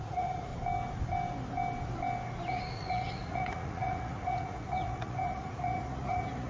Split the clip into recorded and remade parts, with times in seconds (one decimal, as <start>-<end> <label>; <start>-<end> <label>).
0.0-0.5 remade; 0.5-2.5 recorded; 2.5-6.5 remade